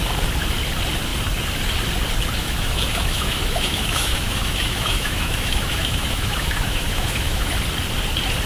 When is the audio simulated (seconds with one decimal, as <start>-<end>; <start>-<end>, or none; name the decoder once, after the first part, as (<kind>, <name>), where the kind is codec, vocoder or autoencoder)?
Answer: 2.4-7.5 (autoencoder, DAC-VAE)